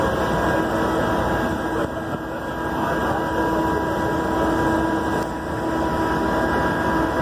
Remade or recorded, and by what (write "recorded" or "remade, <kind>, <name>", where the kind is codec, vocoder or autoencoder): recorded